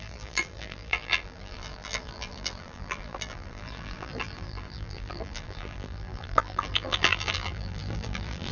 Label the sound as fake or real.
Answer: fake